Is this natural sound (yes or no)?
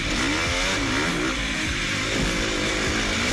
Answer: yes